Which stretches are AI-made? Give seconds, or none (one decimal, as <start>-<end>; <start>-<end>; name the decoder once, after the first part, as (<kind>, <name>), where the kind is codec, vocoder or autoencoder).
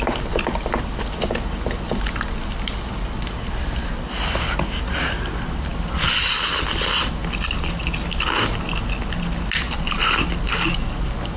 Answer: none